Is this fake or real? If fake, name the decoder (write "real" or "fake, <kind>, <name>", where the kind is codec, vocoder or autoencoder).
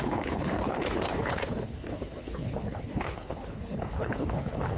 fake, codec, HILCodec